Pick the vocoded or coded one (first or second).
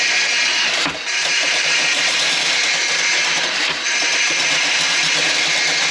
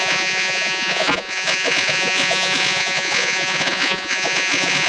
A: second